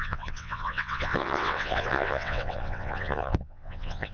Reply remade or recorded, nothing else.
remade